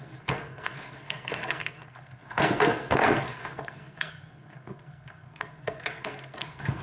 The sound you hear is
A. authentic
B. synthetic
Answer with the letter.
B